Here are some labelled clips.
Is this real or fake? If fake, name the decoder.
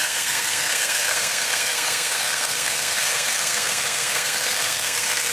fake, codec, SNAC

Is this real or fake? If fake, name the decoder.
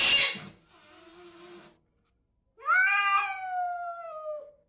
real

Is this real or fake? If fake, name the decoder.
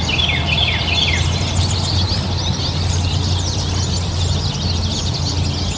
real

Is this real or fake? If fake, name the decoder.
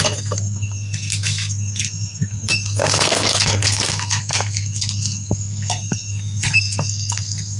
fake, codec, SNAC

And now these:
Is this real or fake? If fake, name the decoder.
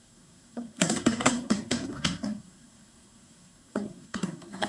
fake, codec, SNAC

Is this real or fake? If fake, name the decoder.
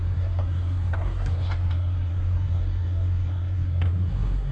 fake, codec, SNAC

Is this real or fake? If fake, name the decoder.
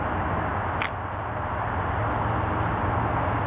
real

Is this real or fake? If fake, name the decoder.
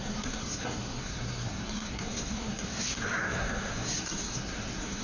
fake, codec, SNAC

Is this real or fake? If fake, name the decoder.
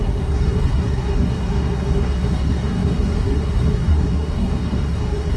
fake, codec, SNAC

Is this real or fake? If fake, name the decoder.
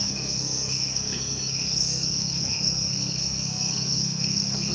fake, codec, SNAC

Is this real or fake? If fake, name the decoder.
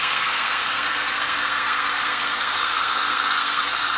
fake, codec, SNAC